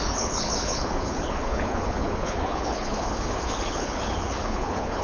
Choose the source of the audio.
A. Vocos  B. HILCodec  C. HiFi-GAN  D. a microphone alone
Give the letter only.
B